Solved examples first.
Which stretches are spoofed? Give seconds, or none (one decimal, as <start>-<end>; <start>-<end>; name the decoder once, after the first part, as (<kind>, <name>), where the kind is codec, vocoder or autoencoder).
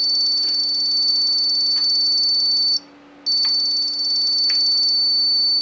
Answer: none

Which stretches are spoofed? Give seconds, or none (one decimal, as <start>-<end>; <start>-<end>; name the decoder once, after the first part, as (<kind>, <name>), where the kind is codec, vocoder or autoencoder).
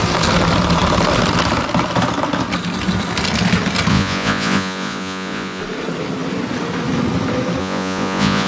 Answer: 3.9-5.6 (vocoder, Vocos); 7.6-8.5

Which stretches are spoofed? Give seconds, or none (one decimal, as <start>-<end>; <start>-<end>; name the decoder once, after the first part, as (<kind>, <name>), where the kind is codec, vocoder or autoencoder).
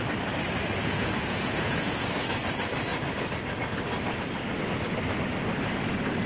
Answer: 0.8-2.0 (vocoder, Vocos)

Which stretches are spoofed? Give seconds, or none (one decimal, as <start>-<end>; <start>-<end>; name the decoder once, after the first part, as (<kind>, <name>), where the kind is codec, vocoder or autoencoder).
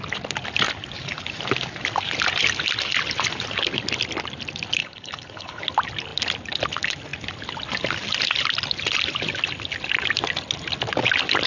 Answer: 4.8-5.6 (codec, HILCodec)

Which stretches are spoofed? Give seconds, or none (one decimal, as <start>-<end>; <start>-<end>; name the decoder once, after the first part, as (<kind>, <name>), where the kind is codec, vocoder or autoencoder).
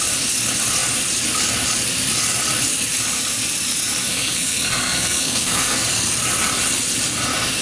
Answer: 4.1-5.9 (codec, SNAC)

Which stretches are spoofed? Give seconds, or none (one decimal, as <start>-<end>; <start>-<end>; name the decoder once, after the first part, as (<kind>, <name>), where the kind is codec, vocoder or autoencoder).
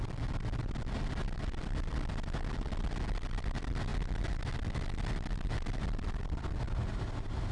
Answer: none